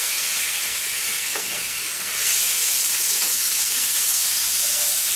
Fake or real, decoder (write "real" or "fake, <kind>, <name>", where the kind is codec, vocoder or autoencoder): fake, codec, SNAC